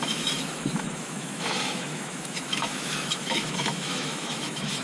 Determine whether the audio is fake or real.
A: fake